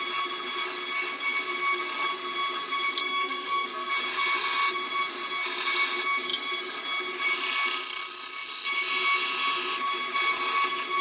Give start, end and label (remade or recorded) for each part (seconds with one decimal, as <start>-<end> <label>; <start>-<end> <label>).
0.0-3.0 recorded; 3.0-3.9 remade; 3.9-11.0 recorded